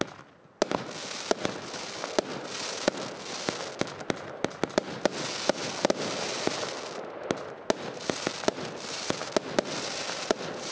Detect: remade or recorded recorded